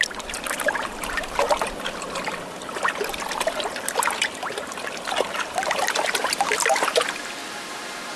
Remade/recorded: recorded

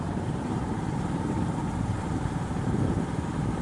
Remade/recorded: remade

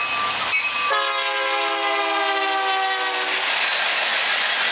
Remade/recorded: recorded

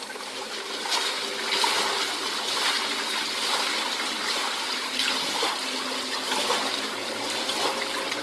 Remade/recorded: recorded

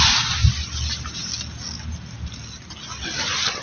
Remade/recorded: recorded